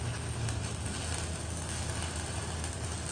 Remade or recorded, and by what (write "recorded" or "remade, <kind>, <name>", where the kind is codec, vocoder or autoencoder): recorded